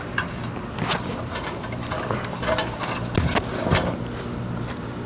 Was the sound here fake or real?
real